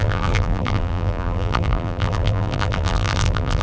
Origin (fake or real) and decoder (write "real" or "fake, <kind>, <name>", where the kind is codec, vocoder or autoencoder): fake, vocoder, BigVGAN v2